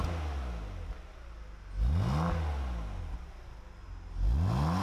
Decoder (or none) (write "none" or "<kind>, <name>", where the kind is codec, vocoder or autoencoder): none